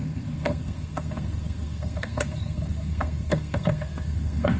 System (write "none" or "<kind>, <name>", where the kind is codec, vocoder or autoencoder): codec, SNAC